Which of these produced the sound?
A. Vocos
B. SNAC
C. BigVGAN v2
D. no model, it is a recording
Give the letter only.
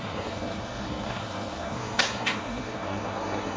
B